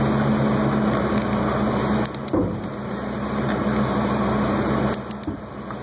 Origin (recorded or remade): recorded